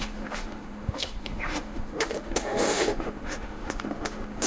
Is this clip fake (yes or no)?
yes